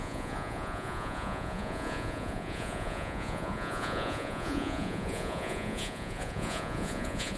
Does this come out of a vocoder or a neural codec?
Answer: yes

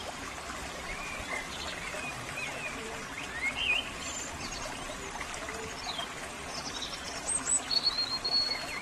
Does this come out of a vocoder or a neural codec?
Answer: no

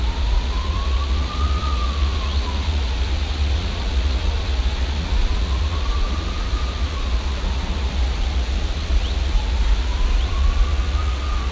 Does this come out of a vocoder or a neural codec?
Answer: yes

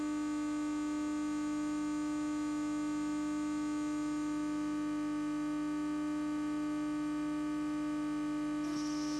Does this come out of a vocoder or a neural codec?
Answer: no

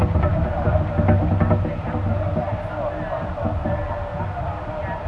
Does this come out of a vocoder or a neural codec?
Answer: no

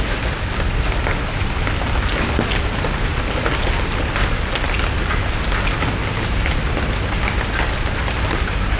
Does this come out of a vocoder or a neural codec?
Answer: no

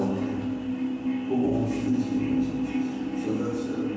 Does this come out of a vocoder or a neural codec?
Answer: no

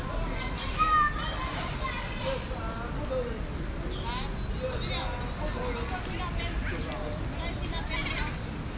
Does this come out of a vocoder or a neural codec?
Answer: no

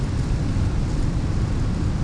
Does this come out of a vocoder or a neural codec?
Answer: no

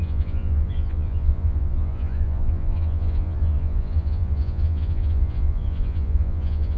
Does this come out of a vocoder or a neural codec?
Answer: yes